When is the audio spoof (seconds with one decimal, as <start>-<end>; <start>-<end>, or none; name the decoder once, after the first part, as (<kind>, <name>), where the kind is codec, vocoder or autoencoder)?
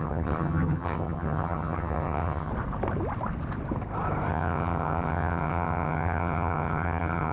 0.0-2.5 (vocoder, HiFi-GAN); 4.3-7.3